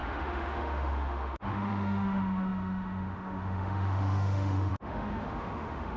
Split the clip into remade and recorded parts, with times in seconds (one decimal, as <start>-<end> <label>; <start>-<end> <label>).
0.0-6.0 remade